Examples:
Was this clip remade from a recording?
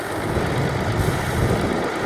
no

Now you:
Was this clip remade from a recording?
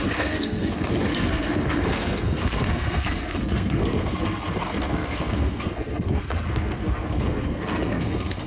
yes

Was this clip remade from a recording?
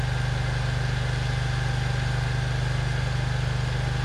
no